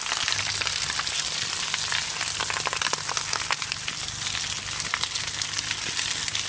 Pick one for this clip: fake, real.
real